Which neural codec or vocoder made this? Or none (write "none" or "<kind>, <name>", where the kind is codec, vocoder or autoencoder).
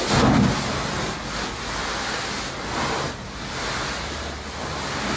none